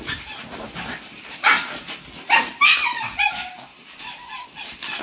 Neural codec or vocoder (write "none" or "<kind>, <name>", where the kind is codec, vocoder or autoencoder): vocoder, BigVGAN v2